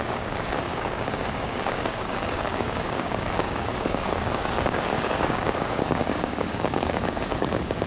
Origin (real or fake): fake